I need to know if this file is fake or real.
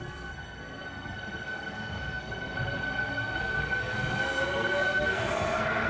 fake